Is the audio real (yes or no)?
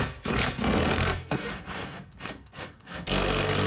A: no